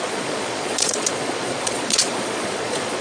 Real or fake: fake